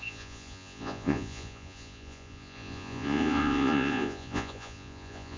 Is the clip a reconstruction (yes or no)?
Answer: yes